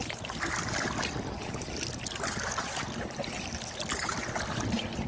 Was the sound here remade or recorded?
recorded